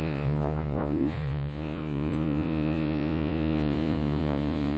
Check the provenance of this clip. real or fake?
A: fake